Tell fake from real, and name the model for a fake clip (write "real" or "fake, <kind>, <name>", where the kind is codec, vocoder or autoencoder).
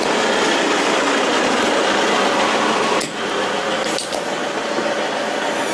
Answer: real